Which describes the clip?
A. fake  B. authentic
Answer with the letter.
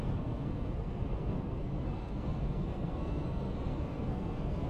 A